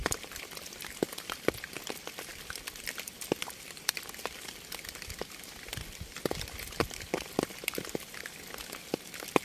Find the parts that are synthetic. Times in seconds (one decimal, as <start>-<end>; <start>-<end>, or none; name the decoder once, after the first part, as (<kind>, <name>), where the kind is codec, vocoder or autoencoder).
none